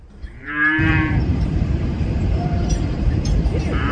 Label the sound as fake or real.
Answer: fake